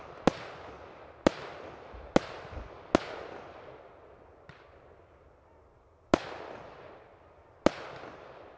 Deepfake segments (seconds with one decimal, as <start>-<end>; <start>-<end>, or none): none